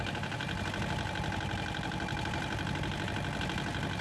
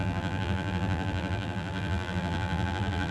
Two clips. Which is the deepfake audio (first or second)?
second